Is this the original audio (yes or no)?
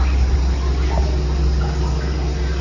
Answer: yes